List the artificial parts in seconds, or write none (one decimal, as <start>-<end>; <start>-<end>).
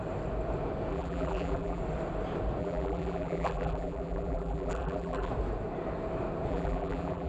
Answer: 0.9-1.8; 2.6-5.3; 6.5-7.3